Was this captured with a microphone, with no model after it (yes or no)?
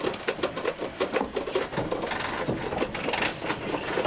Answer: yes